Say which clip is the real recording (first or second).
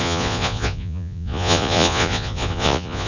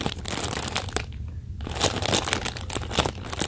second